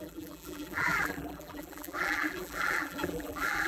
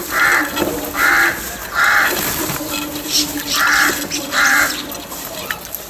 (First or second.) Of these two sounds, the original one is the second